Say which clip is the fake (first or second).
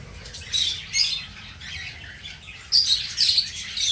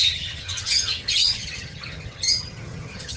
second